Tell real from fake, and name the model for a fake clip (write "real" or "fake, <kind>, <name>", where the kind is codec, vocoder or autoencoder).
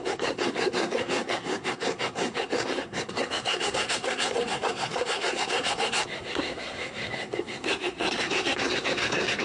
fake, codec, SNAC